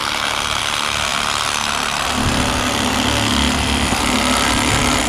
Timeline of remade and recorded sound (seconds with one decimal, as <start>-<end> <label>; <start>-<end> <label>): 0.0-5.1 recorded